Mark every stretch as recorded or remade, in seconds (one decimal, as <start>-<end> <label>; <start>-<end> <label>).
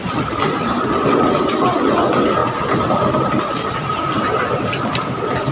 0.0-5.5 recorded